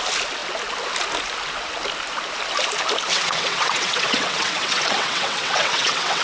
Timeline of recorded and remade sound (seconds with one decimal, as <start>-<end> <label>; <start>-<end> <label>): 0.0-3.1 recorded; 3.1-6.2 remade